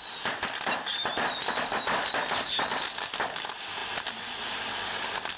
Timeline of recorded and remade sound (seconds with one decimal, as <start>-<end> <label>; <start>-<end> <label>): 0.0-5.4 recorded